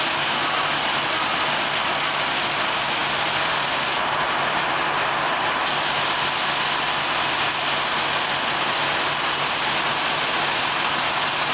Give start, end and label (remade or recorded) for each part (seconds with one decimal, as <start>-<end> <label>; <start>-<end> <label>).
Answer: 0.0-11.5 recorded